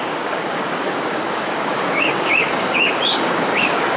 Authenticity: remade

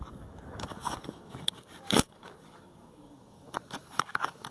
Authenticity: remade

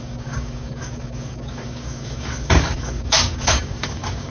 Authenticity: remade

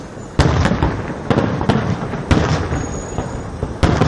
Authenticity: recorded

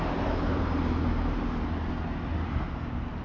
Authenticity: recorded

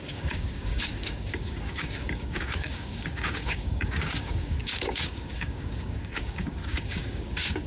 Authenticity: remade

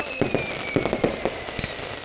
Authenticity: recorded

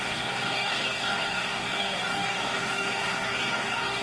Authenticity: remade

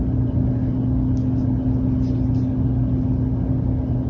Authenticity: recorded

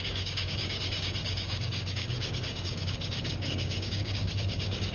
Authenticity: remade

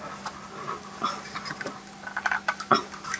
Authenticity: recorded